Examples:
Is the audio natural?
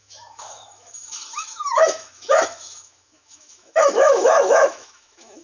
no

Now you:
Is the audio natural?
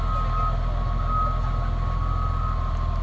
yes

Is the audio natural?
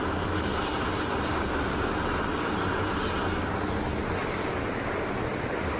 yes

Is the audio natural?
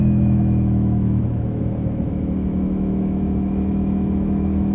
no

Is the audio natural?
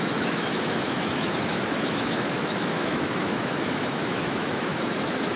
no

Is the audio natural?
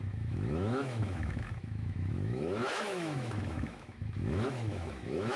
no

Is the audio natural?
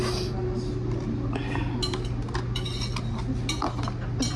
yes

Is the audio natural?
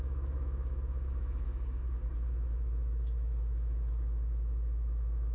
no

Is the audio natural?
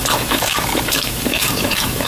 no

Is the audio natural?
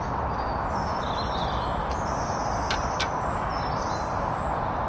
yes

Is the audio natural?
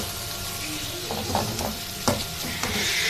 yes